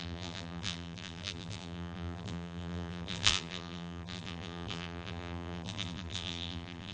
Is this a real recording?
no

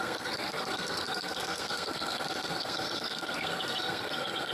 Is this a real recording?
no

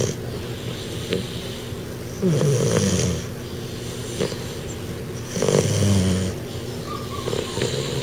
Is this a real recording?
yes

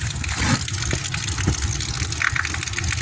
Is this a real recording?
yes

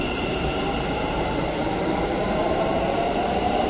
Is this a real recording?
no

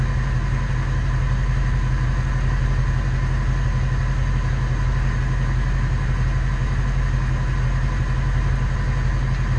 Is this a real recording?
yes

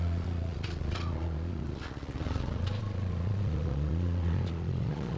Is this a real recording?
no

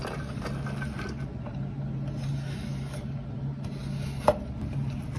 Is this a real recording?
yes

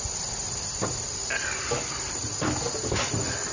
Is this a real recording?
yes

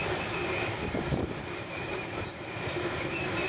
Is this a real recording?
no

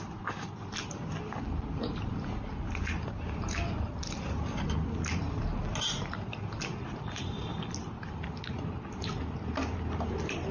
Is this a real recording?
yes